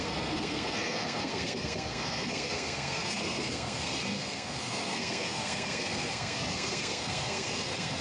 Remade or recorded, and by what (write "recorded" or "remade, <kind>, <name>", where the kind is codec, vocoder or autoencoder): remade, codec, SNAC